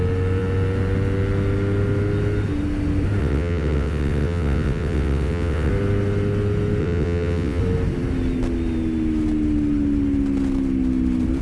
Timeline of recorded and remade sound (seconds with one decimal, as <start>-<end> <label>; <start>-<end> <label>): 0.0-3.2 recorded; 3.2-5.7 remade; 5.7-6.8 recorded; 6.8-7.6 remade; 7.6-11.4 recorded